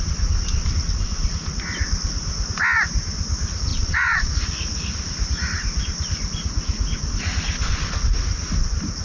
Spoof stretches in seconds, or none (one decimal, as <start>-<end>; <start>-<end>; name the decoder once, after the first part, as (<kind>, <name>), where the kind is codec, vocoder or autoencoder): 3.7-4.3 (vocoder, Vocos)